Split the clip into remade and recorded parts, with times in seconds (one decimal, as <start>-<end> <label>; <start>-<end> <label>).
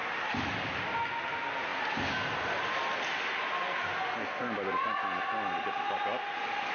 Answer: 0.0-6.7 recorded